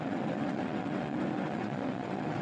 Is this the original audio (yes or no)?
no